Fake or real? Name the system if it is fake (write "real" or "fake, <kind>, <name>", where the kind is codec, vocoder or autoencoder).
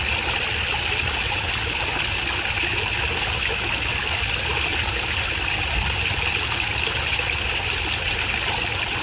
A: real